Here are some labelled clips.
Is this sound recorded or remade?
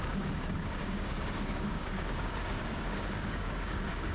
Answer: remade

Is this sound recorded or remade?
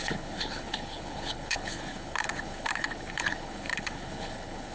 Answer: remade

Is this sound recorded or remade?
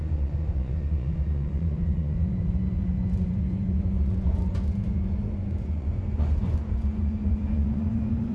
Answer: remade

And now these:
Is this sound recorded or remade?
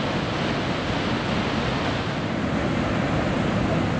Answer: recorded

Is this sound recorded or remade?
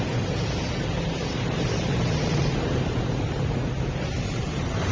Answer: remade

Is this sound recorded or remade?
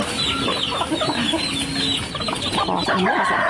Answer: recorded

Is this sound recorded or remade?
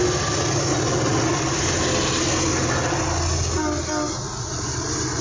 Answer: recorded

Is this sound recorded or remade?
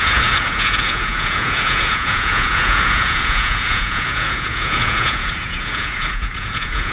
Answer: remade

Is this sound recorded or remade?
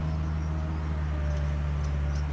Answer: recorded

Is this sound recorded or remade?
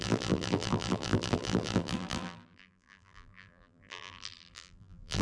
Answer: remade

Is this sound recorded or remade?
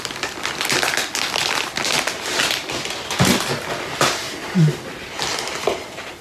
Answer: recorded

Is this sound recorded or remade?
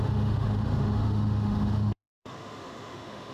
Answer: remade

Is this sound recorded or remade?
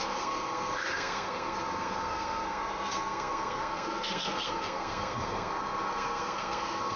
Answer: remade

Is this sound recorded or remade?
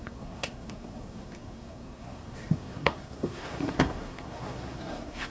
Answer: remade